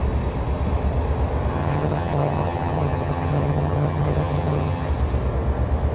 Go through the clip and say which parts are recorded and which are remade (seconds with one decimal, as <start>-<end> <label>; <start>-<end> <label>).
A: 0.0-1.5 recorded; 1.5-4.9 remade; 4.9-5.9 recorded